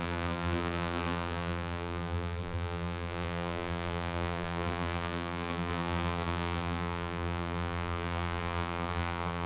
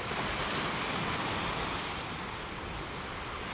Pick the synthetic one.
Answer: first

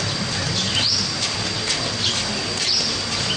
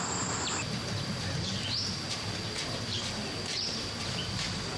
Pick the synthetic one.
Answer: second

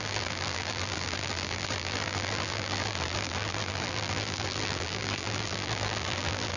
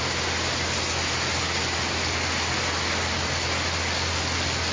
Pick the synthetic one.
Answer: first